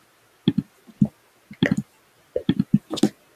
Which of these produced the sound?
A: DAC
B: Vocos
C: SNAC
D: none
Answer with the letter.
D